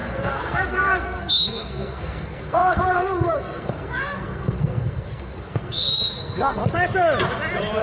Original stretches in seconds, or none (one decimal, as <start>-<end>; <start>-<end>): 6.6-7.8